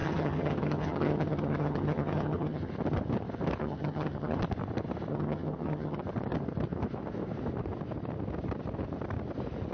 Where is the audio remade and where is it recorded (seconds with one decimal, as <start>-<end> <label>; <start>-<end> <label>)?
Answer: 0.0-2.7 remade; 2.7-3.6 recorded; 3.6-4.4 remade; 4.4-5.1 recorded; 5.1-6.0 remade; 6.0-9.7 recorded